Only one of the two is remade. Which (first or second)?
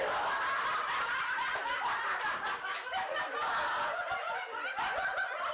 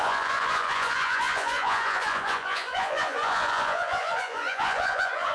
second